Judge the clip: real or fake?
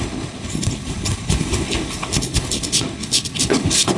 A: fake